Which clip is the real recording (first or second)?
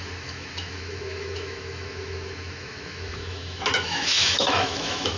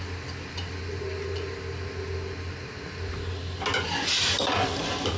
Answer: second